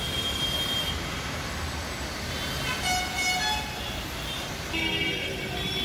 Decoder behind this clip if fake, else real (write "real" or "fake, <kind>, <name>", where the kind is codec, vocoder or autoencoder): real